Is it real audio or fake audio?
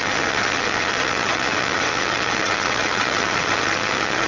fake